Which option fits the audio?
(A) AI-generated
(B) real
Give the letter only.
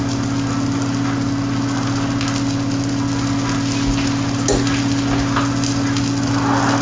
B